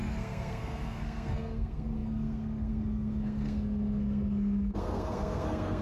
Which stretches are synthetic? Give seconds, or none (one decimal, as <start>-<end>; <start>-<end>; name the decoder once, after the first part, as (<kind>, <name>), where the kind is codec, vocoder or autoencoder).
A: 0.0-5.8 (codec, SNAC)